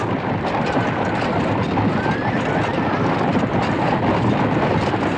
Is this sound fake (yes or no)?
no